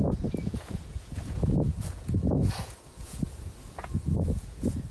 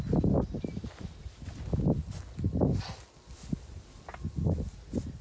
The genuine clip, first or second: second